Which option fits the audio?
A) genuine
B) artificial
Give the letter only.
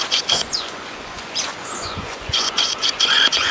B